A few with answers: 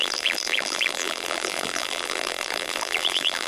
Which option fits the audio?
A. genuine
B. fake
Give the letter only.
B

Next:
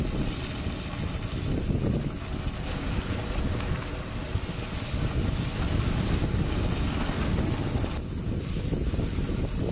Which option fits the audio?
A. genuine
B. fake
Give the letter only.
A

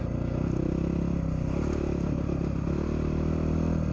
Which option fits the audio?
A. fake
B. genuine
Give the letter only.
B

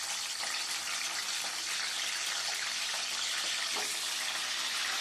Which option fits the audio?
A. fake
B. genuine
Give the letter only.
B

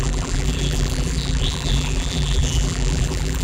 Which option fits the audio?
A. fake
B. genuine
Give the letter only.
A